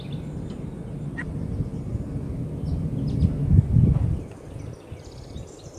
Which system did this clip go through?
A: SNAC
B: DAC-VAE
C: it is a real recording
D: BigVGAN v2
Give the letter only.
C